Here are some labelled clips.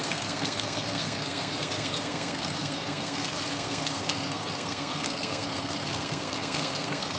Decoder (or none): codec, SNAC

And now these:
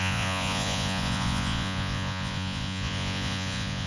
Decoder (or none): vocoder, Vocos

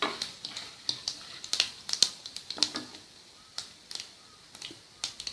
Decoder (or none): none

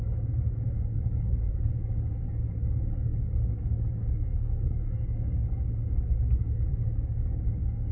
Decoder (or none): codec, DAC